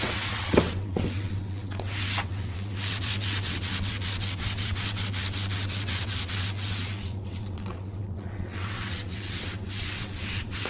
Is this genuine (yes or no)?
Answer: no